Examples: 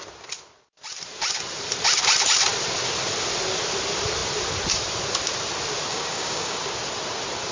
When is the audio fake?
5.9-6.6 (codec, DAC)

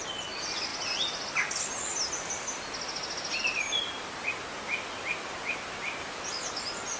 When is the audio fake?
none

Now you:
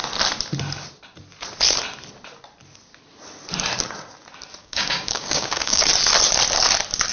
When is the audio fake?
4.6-5.9 (codec, DAC)

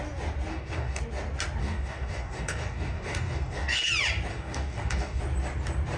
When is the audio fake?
0.5-1.0 (codec, DAC); 1.6-3.9; 4.3-5.2

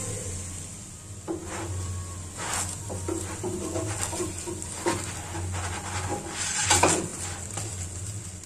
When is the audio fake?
none

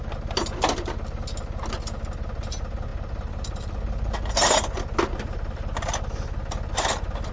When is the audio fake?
none